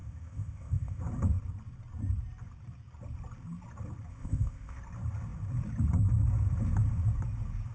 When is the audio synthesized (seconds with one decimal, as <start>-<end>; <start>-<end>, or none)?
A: 0.0-1.0; 4.1-4.8